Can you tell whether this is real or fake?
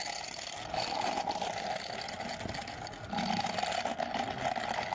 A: real